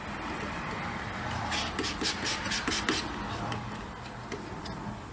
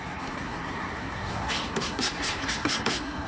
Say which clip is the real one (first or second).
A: first